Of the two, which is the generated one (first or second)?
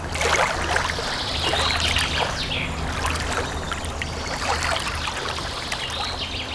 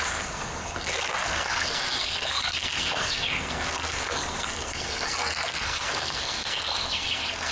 second